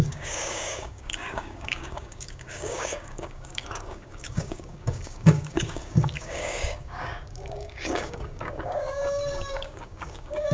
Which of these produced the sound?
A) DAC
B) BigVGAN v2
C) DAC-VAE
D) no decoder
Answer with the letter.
A